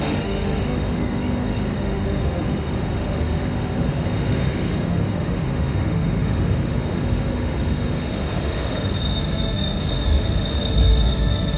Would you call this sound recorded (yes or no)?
no